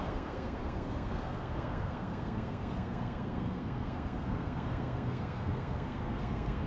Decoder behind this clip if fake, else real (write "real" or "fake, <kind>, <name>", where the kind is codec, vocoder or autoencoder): fake, codec, SNAC